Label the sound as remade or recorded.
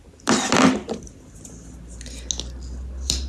recorded